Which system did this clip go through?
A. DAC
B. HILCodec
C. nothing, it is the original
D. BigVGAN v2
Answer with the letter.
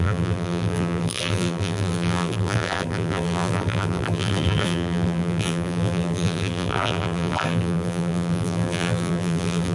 D